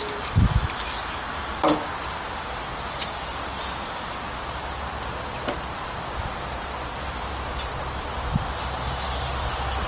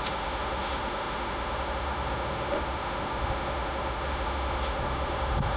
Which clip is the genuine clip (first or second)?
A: first